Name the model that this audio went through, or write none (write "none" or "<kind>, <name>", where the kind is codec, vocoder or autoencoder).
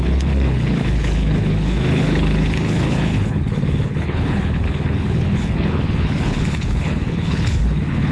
codec, HILCodec